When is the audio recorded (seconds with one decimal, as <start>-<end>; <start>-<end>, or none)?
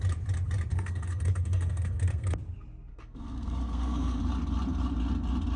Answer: 0.0-0.7; 2.3-2.9; 4.2-5.6